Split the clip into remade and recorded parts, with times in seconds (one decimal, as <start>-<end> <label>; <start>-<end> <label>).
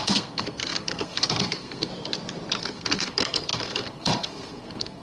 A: 0.0-1.9 remade; 1.9-2.6 recorded; 2.6-5.0 remade